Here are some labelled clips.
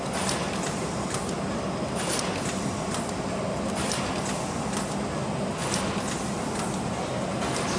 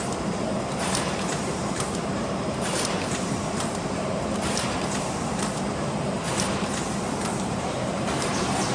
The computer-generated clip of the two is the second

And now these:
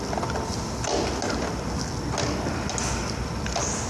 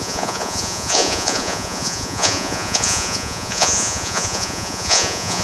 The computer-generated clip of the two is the second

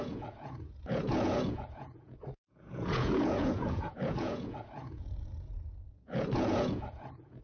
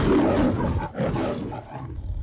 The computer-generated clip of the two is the first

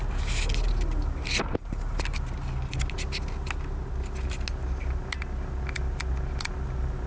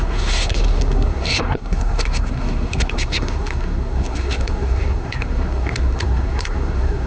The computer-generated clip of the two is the second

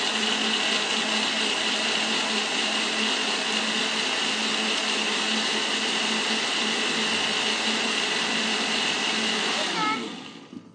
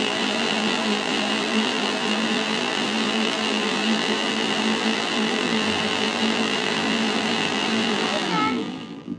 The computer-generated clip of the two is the second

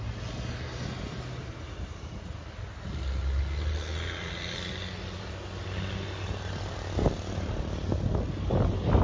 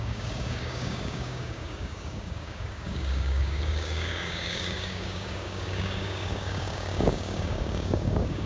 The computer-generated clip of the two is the second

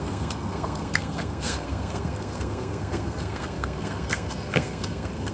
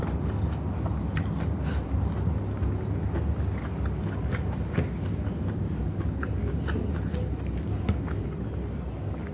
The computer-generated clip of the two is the first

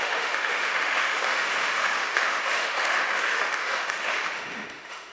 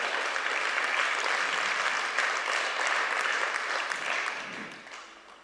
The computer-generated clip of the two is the first